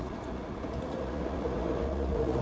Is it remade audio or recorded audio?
remade